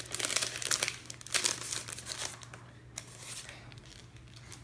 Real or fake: real